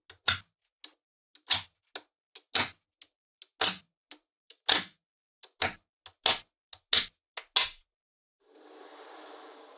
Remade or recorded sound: recorded